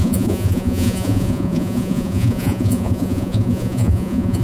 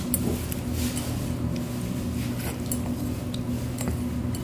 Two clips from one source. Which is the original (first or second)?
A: second